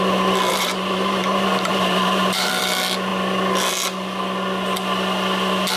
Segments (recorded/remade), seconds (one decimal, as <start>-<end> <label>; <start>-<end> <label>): 0.0-0.5 recorded; 0.5-2.6 remade; 2.6-5.8 recorded